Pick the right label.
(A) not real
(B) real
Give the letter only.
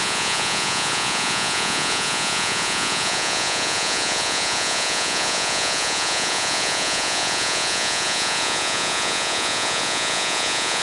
A